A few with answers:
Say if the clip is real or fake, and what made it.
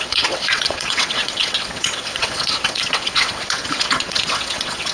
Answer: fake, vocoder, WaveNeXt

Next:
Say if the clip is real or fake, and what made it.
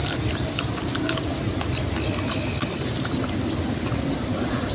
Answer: real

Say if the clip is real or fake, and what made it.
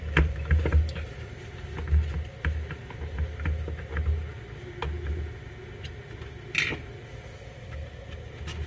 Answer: real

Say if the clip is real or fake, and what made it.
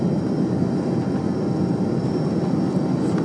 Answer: real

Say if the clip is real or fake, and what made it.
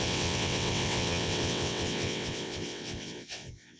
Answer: fake, vocoder, WaveNeXt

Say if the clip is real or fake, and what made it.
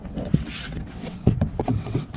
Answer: fake, vocoder, WaveNeXt